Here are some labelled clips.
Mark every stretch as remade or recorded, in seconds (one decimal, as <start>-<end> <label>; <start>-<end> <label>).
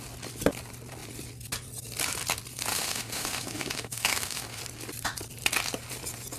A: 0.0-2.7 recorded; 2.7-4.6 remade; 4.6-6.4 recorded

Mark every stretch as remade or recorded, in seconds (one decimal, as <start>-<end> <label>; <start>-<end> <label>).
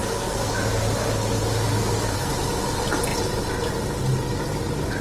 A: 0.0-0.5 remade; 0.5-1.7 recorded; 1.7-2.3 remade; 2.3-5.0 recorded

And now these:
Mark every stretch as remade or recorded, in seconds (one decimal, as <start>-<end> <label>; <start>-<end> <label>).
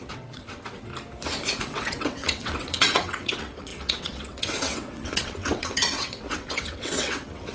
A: 0.0-0.9 remade; 0.9-1.6 recorded; 1.6-7.5 remade